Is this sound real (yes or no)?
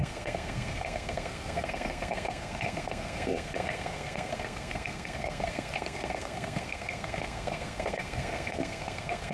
no